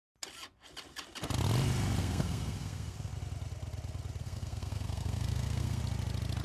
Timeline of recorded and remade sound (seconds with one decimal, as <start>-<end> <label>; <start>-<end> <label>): 0.0-2.0 recorded; 2.0-3.1 remade; 3.1-4.2 recorded; 4.2-5.8 remade; 5.8-6.4 recorded